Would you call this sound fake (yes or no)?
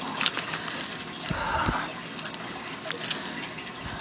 no